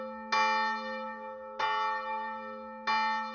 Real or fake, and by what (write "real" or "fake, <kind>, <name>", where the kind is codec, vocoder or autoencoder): real